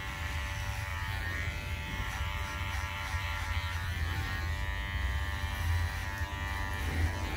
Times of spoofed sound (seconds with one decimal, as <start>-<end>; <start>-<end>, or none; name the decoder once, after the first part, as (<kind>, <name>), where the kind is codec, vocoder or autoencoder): 0.9-4.4 (vocoder, BigVGAN v2)